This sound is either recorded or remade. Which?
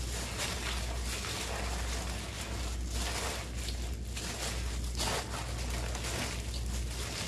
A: recorded